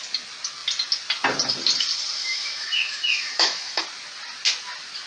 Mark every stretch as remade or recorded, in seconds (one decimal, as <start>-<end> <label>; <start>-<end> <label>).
0.0-2.2 recorded; 2.2-3.8 remade; 3.8-5.1 recorded